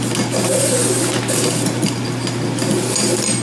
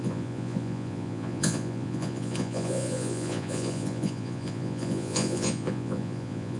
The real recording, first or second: first